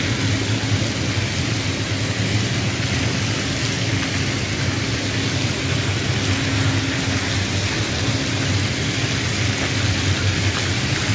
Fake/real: real